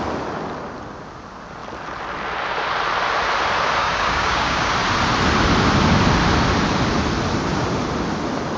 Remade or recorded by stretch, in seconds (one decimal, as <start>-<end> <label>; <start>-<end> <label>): 0.0-3.8 recorded; 3.8-4.7 remade; 4.7-8.6 recorded